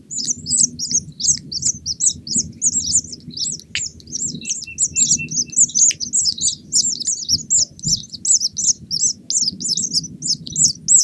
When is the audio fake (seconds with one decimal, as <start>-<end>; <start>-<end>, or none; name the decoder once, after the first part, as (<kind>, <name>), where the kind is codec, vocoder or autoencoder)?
none